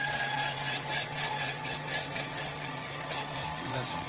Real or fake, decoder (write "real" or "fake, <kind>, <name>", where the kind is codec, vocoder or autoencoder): fake, vocoder, WaveNeXt